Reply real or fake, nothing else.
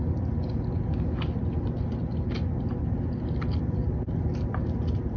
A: real